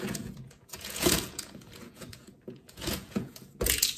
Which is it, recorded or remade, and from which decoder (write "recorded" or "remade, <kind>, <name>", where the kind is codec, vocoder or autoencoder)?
remade, vocoder, Vocos